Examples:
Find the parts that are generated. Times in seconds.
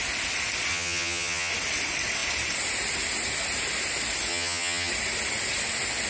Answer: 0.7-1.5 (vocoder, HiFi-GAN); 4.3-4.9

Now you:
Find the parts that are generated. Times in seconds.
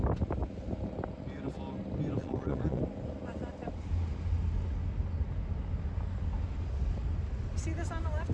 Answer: 2.2-2.8 (vocoder, Vocos)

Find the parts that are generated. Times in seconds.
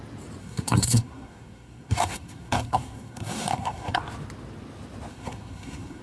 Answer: 0.4-4.0 (codec, SNAC); 5.1-6.0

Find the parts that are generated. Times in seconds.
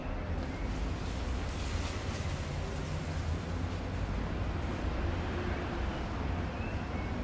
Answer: none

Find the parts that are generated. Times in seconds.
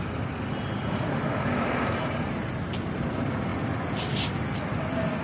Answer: none